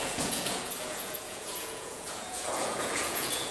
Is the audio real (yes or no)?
no